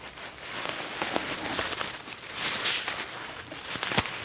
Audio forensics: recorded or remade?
recorded